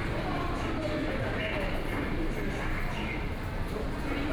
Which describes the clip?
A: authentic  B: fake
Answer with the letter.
A